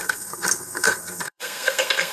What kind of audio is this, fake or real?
fake